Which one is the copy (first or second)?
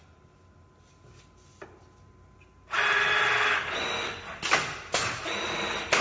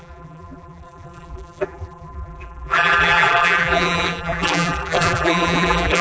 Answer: second